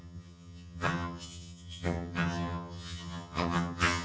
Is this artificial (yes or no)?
yes